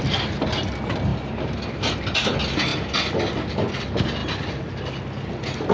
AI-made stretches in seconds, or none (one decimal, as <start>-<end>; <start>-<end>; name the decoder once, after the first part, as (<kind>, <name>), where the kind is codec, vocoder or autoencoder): none